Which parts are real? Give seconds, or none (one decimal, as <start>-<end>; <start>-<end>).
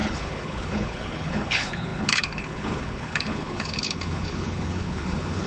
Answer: none